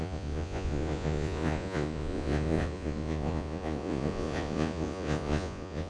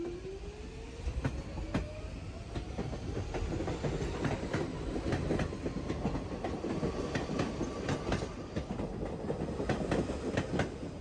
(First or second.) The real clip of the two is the second